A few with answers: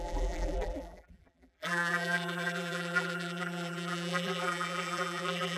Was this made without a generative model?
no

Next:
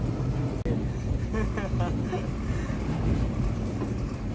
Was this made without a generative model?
yes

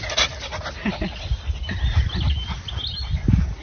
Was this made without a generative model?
yes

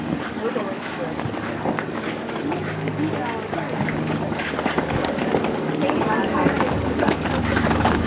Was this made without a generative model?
no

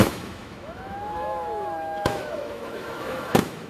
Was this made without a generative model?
no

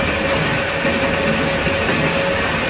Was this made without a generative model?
yes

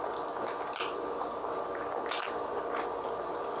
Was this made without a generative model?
yes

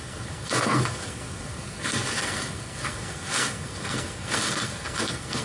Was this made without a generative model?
no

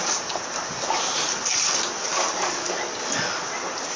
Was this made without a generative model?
yes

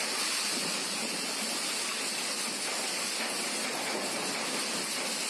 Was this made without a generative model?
yes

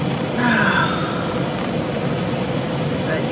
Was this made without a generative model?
yes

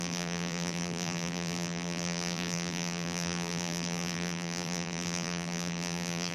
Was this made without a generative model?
no